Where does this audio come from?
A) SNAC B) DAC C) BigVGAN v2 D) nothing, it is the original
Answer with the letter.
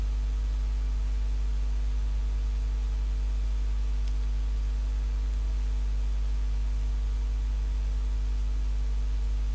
D